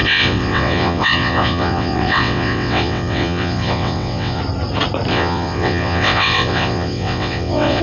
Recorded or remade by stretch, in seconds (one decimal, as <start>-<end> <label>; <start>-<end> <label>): 0.0-4.4 remade; 4.4-5.1 recorded; 5.1-7.8 remade